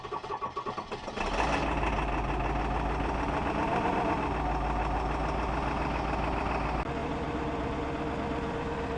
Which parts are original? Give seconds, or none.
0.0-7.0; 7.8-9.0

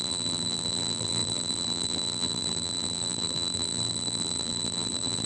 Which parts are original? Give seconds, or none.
none